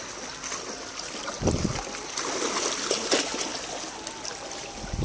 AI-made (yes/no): no